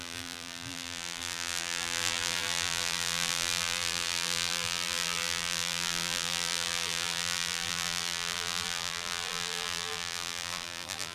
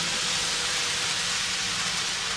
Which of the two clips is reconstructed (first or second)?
first